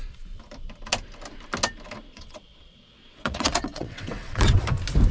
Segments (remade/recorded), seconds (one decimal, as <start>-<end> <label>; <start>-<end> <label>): 0.0-2.1 recorded; 2.1-4.6 remade; 4.6-5.1 recorded